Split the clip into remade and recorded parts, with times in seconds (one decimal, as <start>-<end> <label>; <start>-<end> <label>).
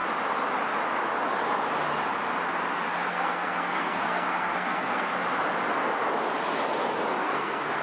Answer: 0.0-3.1 recorded; 3.1-5.1 remade; 5.1-7.2 recorded; 7.2-7.8 remade